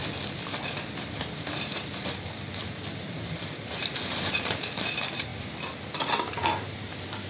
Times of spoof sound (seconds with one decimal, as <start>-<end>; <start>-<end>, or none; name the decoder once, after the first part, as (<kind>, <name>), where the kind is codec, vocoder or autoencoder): 1.2-5.3 (vocoder, BigVGAN v2); 6.2-7.3